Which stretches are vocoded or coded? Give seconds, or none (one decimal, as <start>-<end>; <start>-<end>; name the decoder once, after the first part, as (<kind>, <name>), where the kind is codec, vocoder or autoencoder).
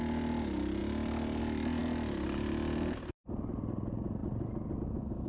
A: none